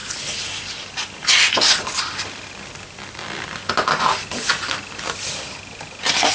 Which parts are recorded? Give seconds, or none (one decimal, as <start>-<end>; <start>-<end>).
0.0-6.3